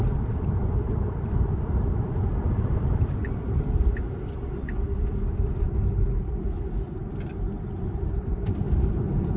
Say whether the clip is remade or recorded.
remade